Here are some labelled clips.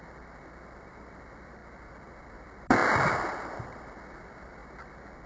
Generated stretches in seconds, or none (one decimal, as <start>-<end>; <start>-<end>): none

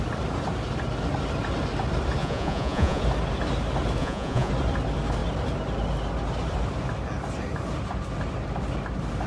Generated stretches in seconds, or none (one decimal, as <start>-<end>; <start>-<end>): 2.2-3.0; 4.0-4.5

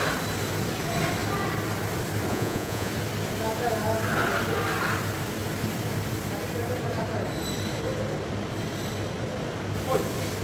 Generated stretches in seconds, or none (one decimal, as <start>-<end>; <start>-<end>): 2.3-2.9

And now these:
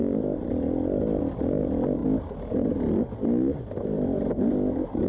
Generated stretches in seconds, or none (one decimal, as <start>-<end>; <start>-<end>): none

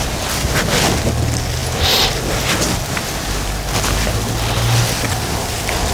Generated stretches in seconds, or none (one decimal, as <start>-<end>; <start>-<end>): none